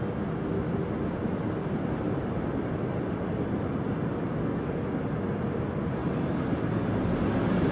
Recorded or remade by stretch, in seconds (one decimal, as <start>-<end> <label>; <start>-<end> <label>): 0.0-1.6 recorded; 1.6-3.3 remade; 3.3-6.0 recorded; 6.0-7.1 remade; 7.1-7.7 recorded